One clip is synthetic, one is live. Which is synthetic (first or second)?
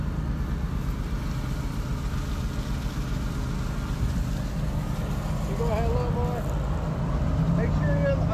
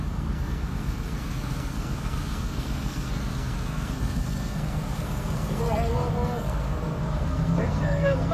second